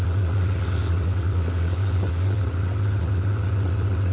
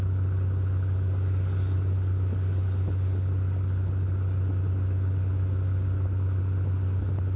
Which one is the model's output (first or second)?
first